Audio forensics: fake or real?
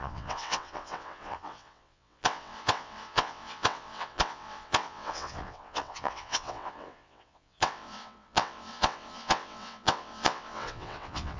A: fake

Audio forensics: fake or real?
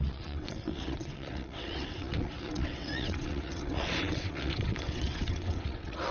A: fake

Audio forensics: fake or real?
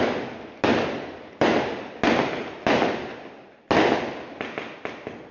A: real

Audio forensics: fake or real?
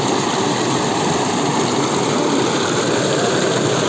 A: real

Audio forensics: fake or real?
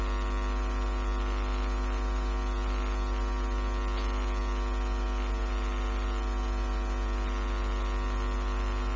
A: real